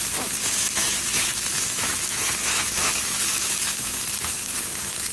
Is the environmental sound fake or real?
fake